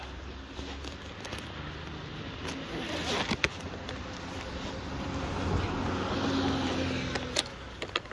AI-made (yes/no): no